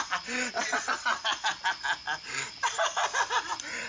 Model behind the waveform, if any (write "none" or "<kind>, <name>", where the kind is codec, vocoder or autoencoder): none